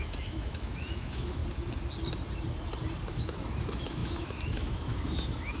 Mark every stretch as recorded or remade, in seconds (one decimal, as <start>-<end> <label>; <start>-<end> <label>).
0.0-1.4 remade; 1.4-3.1 recorded; 3.1-5.6 remade